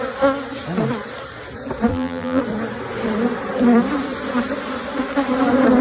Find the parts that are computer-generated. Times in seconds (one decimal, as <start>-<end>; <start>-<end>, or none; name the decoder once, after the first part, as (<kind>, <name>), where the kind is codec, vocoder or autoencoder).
1.9-2.4 (vocoder, BigVGAN v2)